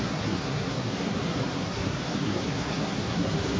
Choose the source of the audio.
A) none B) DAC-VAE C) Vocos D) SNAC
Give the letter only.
D